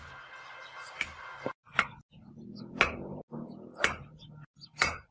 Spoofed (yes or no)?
no